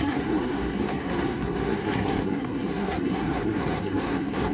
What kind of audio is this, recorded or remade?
remade